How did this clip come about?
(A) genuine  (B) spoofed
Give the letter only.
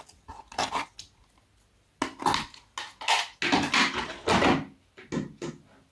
A